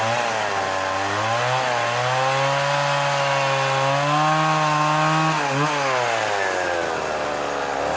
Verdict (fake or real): real